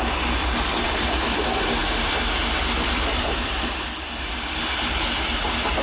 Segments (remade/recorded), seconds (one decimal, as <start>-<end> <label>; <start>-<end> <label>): 0.0-0.4 recorded; 0.4-1.4 remade; 1.4-1.8 recorded; 1.8-5.3 remade; 5.3-5.8 recorded